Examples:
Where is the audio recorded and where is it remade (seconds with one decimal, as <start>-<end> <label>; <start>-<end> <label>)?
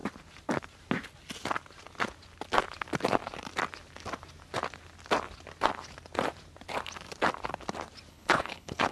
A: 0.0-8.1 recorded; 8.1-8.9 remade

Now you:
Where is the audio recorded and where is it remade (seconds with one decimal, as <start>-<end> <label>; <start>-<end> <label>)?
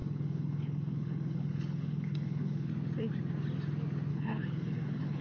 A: 0.0-2.7 remade; 2.7-4.1 recorded; 4.1-5.2 remade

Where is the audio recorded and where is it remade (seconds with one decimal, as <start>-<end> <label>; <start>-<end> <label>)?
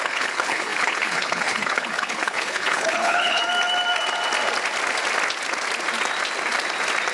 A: 0.0-3.4 remade; 3.4-7.1 recorded